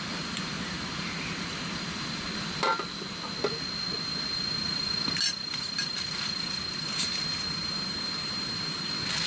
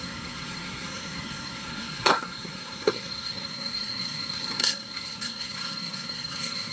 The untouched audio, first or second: first